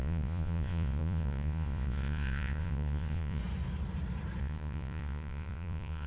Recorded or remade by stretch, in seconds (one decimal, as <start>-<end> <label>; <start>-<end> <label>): 0.0-3.4 remade; 3.4-4.4 recorded; 4.4-6.1 remade